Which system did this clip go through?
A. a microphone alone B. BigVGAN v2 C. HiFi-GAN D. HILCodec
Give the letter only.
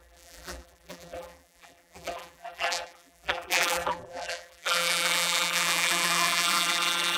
B